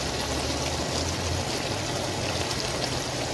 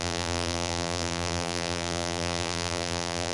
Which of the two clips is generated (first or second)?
second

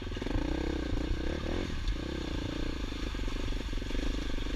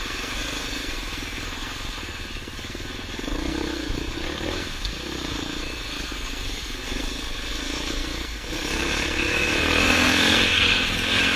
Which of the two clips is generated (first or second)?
second